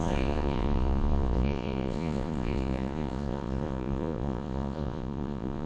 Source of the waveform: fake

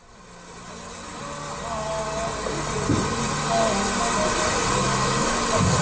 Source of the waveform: real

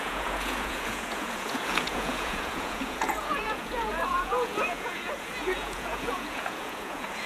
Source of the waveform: fake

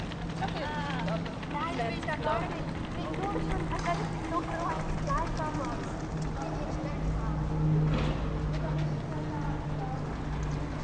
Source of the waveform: real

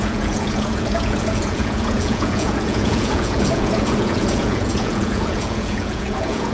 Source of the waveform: fake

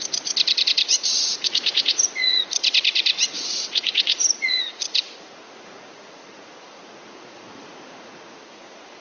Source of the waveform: fake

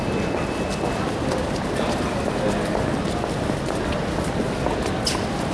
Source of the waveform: real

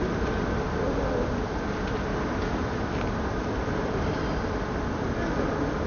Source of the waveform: real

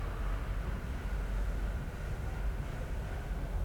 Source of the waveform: real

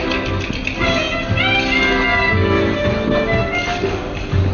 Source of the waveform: real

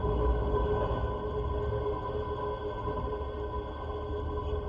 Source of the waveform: real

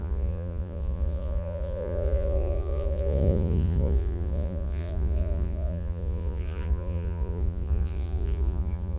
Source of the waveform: fake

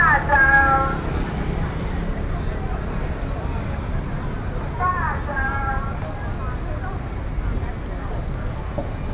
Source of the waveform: real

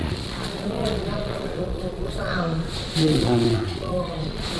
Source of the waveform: fake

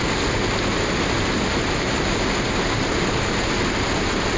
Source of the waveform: real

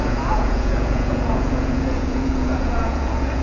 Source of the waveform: fake